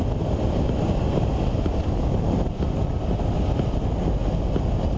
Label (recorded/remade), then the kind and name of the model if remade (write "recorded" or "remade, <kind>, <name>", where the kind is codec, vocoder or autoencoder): recorded